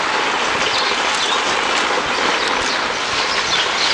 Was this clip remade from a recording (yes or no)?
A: no